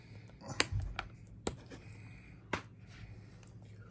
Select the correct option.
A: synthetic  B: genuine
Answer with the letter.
B